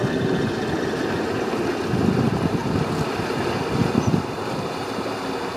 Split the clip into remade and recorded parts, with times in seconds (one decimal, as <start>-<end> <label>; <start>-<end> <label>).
0.0-5.6 recorded